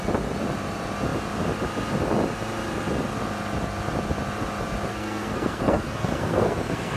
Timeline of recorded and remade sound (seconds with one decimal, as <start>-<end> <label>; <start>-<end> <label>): 0.0-4.9 recorded; 4.9-7.0 remade